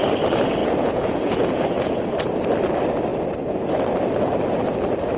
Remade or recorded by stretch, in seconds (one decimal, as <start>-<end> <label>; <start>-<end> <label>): 0.0-0.6 recorded; 0.6-2.0 remade; 2.0-5.2 recorded